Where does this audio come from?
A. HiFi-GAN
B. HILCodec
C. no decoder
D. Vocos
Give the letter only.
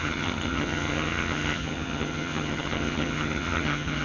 A